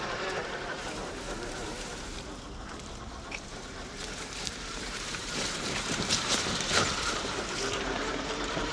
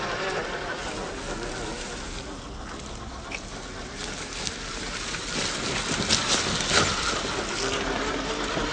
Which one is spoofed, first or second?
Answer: first